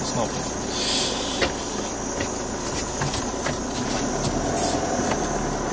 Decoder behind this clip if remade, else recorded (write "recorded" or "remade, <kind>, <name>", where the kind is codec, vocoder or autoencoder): recorded